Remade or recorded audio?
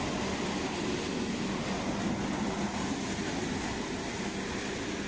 recorded